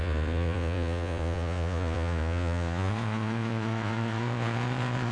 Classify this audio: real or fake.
fake